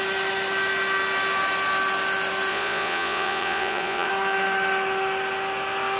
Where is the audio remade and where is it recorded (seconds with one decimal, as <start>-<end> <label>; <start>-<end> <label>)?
0.0-2.5 recorded; 2.5-4.1 remade; 4.1-6.0 recorded